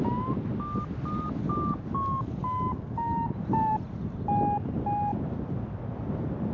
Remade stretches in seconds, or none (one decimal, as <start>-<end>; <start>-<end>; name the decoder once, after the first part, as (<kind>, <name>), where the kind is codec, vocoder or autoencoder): none